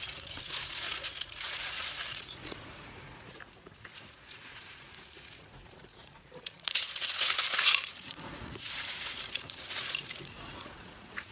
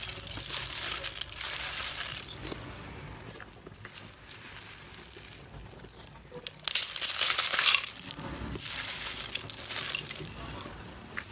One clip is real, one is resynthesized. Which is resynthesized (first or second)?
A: first